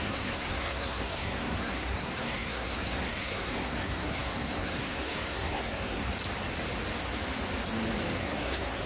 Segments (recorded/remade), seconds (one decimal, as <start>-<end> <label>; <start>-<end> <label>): 0.0-6.1 remade; 6.1-8.2 recorded; 8.2-8.9 remade